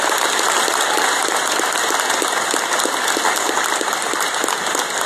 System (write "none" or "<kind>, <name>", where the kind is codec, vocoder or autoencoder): none